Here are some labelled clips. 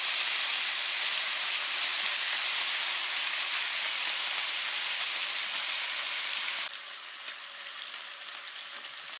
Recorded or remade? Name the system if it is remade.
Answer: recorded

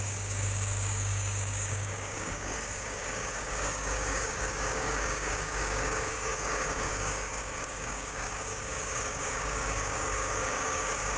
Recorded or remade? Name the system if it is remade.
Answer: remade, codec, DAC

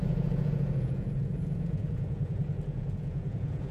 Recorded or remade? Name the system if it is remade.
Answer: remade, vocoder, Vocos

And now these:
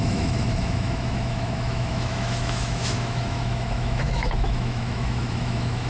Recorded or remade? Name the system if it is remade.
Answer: remade, autoencoder, DAC-VAE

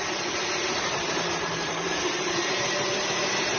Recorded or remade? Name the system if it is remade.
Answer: remade, vocoder, BigVGAN v2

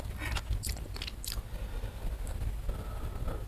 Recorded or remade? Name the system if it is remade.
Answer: recorded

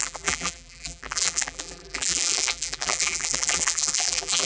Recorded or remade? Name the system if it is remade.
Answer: remade, vocoder, BigVGAN v2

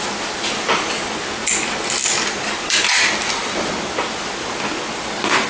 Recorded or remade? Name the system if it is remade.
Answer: recorded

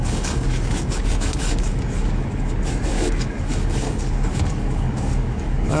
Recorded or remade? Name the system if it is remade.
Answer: remade, codec, DAC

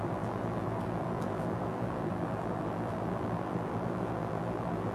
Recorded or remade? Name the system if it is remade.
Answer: remade, vocoder, BigVGAN v2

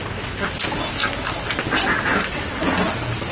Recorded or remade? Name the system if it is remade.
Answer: recorded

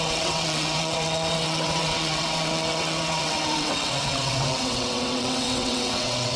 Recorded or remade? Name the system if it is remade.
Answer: remade, vocoder, WaveNeXt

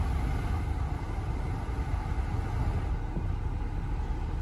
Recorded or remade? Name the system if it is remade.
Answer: recorded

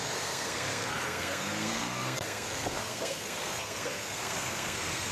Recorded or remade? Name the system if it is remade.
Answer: remade, codec, SNAC